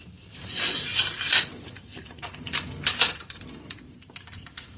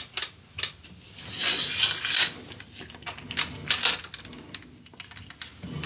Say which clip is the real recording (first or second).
second